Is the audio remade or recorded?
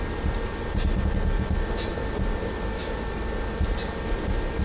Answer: recorded